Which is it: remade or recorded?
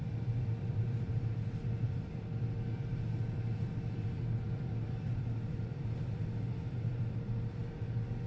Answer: remade